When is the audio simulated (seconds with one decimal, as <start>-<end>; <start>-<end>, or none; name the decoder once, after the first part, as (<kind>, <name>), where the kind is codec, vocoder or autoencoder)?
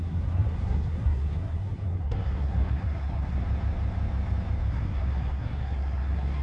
0.0-3.4 (codec, SNAC); 4.7-6.4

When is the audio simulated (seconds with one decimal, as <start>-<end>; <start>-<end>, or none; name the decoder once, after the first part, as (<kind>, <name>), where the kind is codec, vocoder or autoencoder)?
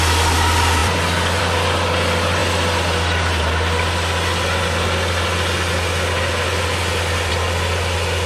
none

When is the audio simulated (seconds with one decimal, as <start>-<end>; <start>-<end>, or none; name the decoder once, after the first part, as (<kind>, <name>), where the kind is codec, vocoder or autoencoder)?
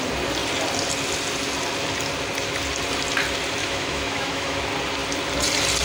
3.6-4.6 (autoencoder, DAC-VAE)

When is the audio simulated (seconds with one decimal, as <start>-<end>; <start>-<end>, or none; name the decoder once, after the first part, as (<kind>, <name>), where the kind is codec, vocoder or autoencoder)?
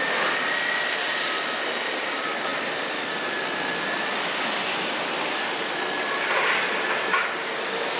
7.0-7.6 (codec, DAC)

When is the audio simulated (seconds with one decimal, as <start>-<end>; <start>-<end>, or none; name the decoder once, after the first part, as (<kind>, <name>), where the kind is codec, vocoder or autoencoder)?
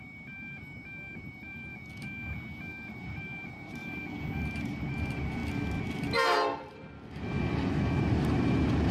0.0-1.7 (vocoder, BigVGAN v2); 2.7-3.8; 4.5-5.4; 8.0-8.9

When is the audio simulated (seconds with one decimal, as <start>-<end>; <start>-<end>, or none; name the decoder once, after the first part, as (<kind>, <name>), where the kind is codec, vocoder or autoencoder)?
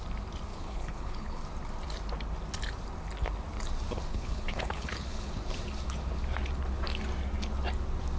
0.5-1.4 (codec, HILCodec); 4.1-5.3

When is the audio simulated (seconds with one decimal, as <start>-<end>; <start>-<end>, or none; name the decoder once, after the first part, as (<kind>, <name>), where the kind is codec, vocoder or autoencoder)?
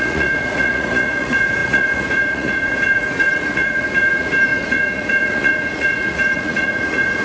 0.0-7.2 (vocoder, Vocos)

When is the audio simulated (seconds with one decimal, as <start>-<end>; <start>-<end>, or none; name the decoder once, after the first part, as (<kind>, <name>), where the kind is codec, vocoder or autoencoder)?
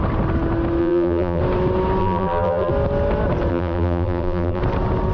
0.8-1.4 (vocoder, BigVGAN v2); 2.0-2.7; 3.5-4.6